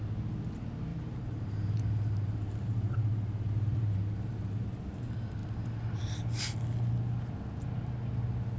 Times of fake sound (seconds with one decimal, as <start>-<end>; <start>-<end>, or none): 0.9-4.7